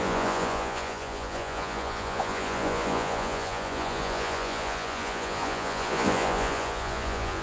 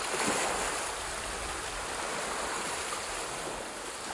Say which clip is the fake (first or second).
first